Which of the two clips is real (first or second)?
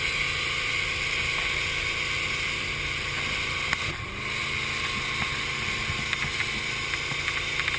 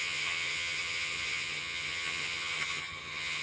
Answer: first